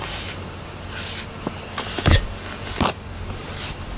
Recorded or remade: recorded